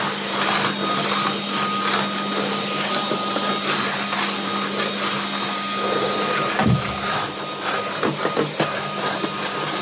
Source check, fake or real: real